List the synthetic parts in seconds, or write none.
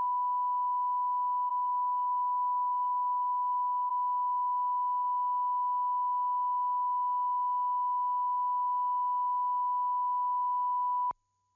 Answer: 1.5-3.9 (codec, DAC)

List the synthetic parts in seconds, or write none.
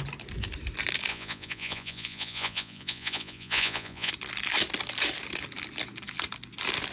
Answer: 1.1-4.1 (vocoder, Vocos)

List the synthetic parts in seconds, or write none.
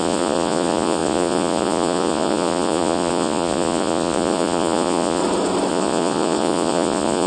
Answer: 0.0-5.2 (vocoder, Vocos); 5.7-7.3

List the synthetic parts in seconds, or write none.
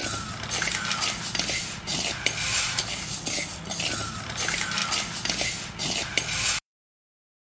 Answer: 1.5-1.9 (vocoder, BigVGAN v2); 4.1-4.8; 6.6-7.6